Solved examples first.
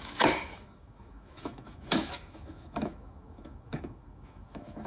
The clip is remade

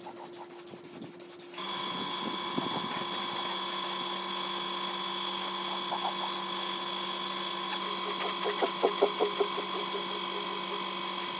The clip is recorded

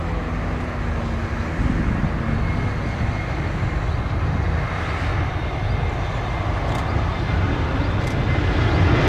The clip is recorded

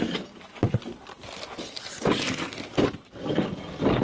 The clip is recorded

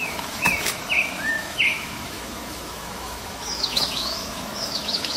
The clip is remade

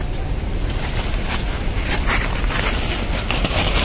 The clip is recorded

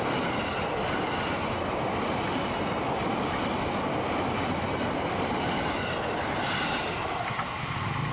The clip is recorded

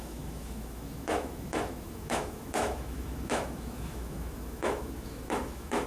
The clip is remade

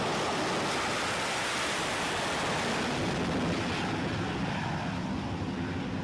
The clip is recorded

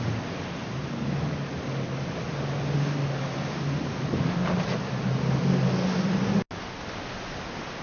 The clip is recorded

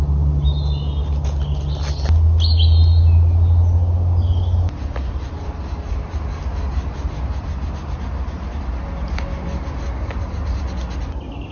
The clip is recorded